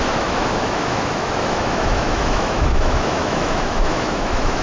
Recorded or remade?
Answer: remade